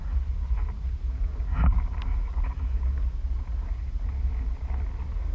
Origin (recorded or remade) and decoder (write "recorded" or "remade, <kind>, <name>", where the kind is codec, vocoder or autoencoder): recorded